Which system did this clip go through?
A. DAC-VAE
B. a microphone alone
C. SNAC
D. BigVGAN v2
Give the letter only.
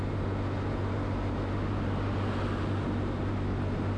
B